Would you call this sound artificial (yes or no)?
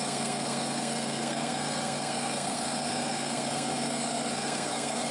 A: yes